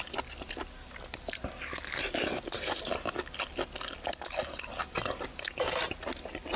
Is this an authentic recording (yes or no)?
yes